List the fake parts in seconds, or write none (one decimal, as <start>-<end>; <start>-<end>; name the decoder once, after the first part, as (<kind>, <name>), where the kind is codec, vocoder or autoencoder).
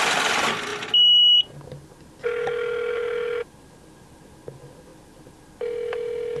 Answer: none